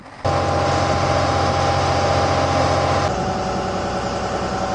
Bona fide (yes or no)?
yes